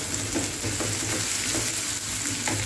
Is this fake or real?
real